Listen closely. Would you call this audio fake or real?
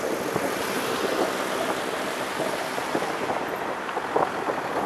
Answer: real